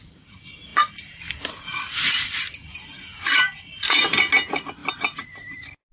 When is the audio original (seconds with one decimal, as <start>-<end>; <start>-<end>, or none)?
0.0-1.7; 2.4-3.1; 3.7-5.9